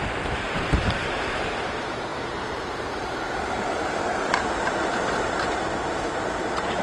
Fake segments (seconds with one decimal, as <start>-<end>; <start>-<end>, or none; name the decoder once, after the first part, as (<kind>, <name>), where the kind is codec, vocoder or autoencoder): 0.0-6.8 (vocoder, BigVGAN v2)